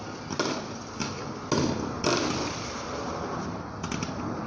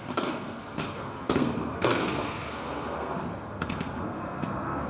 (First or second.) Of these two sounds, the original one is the first